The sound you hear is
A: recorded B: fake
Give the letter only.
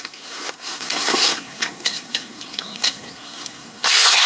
B